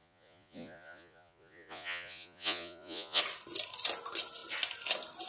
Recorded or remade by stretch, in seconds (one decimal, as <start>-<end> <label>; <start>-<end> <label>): 0.0-3.2 remade; 3.2-5.3 recorded